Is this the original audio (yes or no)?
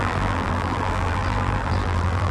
no